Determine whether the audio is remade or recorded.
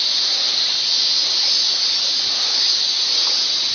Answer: recorded